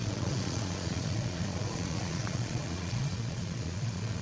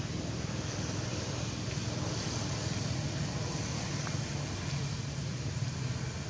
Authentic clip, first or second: second